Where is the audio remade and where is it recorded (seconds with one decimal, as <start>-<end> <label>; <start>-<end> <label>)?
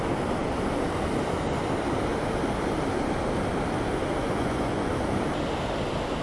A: 0.0-4.2 recorded; 4.2-4.9 remade; 4.9-6.2 recorded